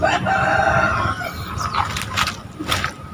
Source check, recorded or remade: recorded